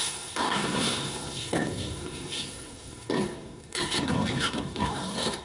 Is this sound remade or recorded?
remade